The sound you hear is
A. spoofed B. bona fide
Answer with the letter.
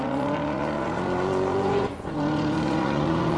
A